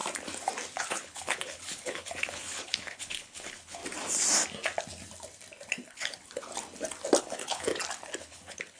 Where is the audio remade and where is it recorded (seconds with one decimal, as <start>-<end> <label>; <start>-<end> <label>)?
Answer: 0.0-0.8 recorded; 0.8-3.8 remade; 3.8-5.9 recorded; 5.9-6.5 remade; 6.5-7.2 recorded; 7.2-7.7 remade; 7.7-8.2 recorded; 8.2-8.8 remade